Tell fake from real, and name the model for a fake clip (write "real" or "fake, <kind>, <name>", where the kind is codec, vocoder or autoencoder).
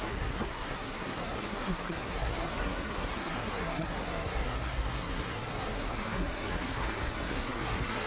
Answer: fake, codec, SNAC